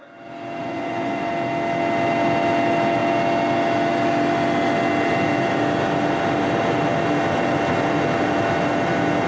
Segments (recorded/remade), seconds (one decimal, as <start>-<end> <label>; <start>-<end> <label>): 0.0-0.6 recorded; 0.6-1.3 remade; 1.3-9.3 recorded